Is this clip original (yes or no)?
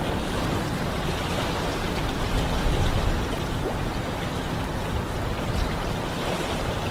yes